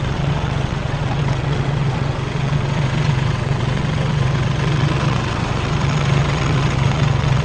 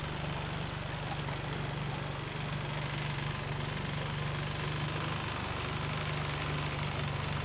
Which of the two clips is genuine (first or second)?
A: second